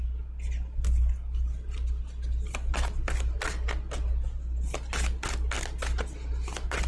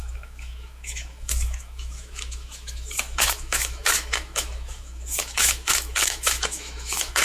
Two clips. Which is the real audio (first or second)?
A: first